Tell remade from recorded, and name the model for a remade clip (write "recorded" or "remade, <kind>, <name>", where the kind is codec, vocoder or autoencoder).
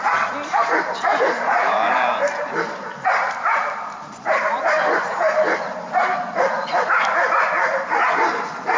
remade, vocoder, BigVGAN v2